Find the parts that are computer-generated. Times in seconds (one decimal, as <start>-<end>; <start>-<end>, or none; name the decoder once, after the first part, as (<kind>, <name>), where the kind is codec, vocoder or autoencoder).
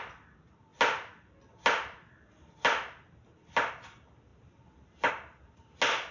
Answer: none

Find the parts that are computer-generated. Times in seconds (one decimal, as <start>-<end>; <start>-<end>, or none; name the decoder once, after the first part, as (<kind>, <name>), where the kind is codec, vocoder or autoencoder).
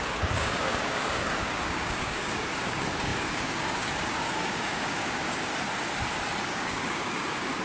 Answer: 0.0-5.5 (codec, DAC); 6.4-7.6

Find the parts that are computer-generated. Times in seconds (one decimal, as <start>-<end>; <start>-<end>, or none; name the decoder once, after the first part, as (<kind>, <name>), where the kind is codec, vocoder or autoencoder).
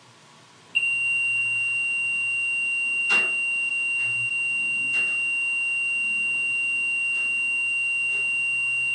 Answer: none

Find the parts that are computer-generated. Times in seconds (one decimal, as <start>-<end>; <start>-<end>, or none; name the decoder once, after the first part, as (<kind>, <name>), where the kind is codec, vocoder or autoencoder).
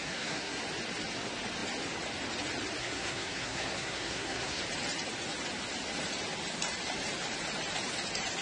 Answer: 0.0-0.6 (codec, SNAC); 2.8-4.6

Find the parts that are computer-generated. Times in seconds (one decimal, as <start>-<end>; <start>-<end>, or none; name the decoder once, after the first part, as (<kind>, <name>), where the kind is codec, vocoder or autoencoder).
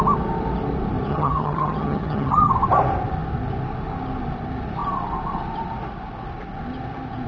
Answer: 1.1-2.5 (vocoder, HiFi-GAN)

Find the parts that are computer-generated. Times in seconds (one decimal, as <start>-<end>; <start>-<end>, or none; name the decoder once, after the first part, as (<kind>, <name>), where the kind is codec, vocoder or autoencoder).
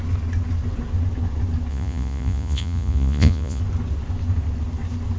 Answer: 1.7-3.6 (vocoder, Vocos)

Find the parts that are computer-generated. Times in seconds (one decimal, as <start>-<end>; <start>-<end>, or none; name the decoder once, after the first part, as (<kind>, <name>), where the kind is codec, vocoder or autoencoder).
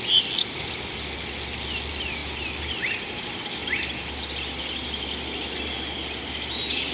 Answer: none